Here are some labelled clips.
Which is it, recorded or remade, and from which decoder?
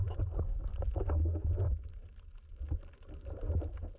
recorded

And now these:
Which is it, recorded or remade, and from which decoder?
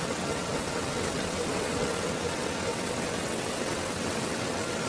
remade, vocoder, WaveNeXt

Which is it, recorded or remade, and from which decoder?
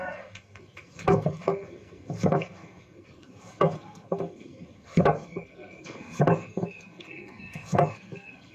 remade, codec, SNAC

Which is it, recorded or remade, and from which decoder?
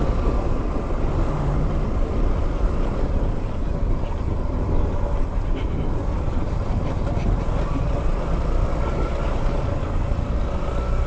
recorded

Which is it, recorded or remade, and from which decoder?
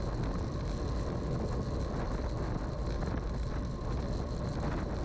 recorded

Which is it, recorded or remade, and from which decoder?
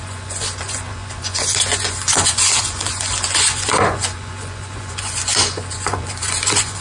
remade, vocoder, Vocos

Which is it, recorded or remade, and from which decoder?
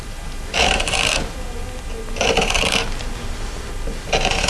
recorded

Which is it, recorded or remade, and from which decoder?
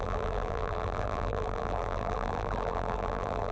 remade, vocoder, BigVGAN v2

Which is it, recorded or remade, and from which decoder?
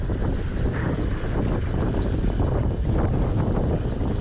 recorded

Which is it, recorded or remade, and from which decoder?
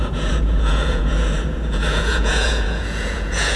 remade, vocoder, Vocos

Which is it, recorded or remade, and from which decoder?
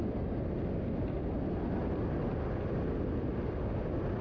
recorded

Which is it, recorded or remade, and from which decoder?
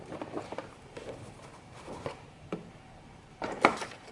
remade, vocoder, BigVGAN v2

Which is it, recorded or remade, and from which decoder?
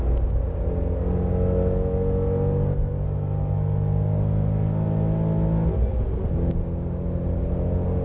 recorded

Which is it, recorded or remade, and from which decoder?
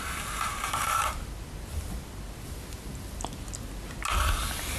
recorded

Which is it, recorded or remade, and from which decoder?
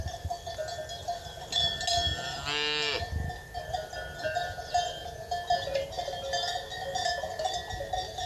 recorded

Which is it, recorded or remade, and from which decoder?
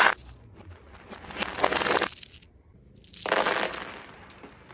recorded